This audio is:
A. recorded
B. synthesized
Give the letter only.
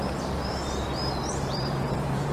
B